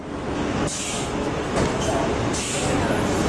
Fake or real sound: real